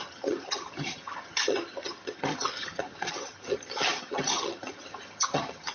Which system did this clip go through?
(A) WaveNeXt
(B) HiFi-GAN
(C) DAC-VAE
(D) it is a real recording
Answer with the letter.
B